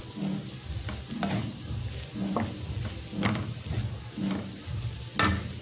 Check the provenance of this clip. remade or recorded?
remade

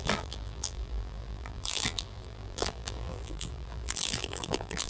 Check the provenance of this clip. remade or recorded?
remade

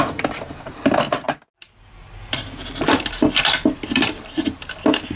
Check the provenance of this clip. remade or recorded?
recorded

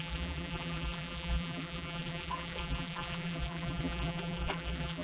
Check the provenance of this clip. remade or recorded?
remade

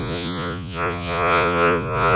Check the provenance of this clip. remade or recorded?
remade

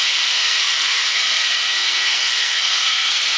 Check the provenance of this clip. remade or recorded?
remade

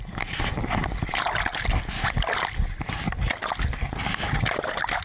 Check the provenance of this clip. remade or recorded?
recorded